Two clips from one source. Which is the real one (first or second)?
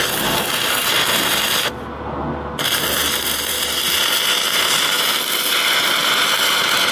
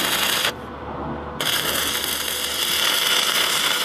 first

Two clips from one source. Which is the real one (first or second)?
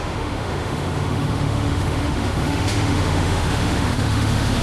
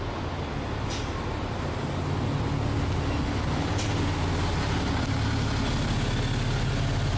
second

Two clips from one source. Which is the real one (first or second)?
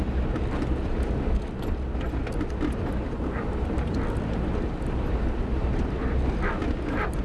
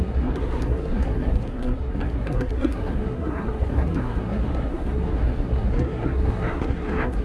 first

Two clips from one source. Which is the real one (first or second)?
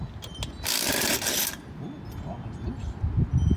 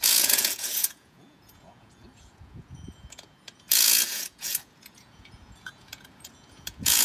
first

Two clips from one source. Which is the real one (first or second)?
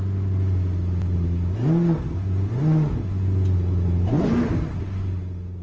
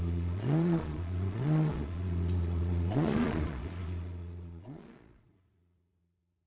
first